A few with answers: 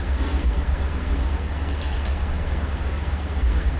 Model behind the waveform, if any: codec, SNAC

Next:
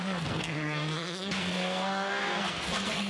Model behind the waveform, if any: codec, SNAC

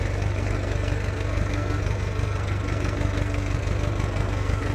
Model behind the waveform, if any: codec, SNAC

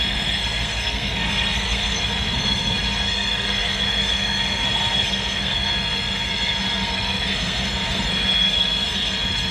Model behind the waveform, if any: codec, SNAC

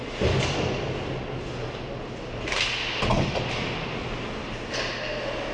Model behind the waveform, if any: none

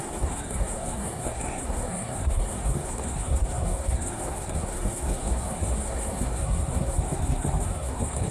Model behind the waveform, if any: codec, SNAC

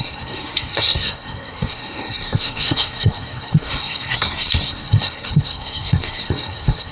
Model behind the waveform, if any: codec, SNAC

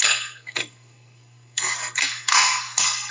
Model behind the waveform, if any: codec, SNAC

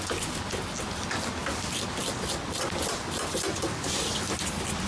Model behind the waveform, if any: none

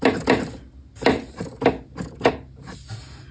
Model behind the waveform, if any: none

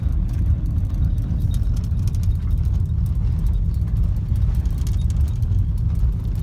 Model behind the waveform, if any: none